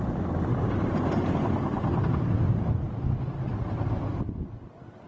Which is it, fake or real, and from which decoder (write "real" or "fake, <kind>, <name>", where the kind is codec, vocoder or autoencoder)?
real